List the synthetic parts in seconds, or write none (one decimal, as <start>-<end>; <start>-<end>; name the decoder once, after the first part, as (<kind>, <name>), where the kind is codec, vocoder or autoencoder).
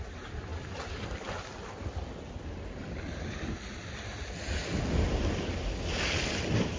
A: none